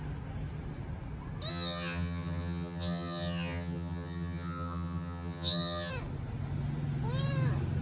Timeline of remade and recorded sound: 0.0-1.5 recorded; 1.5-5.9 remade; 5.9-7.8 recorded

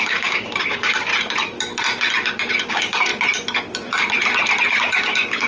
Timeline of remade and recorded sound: 0.0-1.1 remade; 1.1-2.7 recorded; 2.7-3.1 remade; 3.1-4.7 recorded; 4.7-5.5 remade

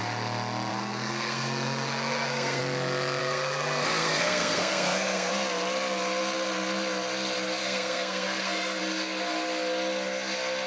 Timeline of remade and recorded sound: 0.0-0.7 recorded; 0.7-2.6 remade; 2.6-3.2 recorded; 3.2-5.3 remade; 5.3-7.6 recorded; 7.6-8.8 remade; 8.8-10.7 recorded

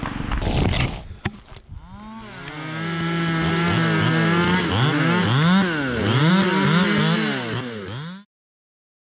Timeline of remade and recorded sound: 0.0-9.2 recorded

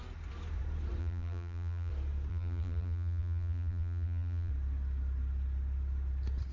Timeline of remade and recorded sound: 0.0-1.0 recorded; 1.0-1.9 remade; 1.9-2.3 recorded; 2.3-4.5 remade; 4.5-6.5 recorded

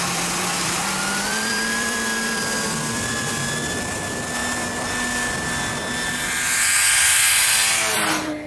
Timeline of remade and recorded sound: 0.0-4.4 remade; 4.4-6.9 recorded; 6.9-8.5 remade

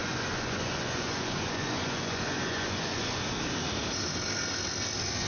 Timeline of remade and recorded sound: 0.0-3.2 remade; 3.2-5.3 recorded